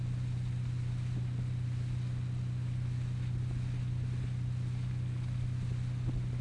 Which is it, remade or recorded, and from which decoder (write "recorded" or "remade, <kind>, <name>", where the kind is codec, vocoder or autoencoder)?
recorded